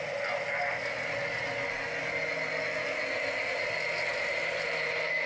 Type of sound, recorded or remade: recorded